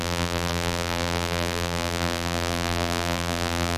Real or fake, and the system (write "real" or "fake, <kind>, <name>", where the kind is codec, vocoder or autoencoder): fake, vocoder, BigVGAN v2